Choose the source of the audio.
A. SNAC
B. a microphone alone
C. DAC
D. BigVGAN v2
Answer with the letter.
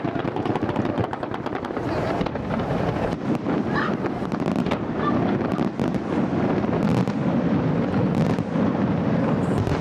D